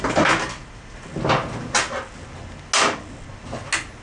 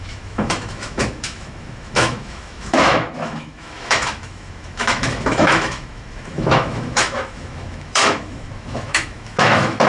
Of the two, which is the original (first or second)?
first